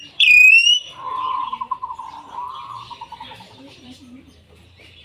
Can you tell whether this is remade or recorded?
remade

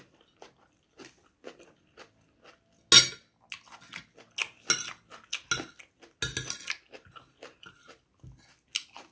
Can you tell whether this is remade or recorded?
recorded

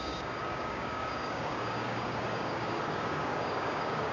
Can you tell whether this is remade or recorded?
remade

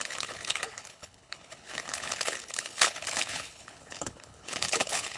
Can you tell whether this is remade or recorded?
remade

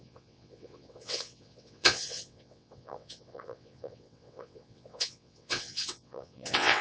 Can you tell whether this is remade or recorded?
remade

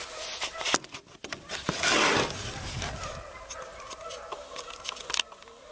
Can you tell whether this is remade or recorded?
recorded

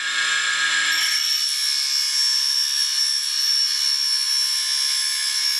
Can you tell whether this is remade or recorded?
recorded